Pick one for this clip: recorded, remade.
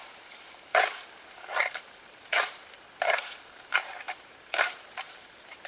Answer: remade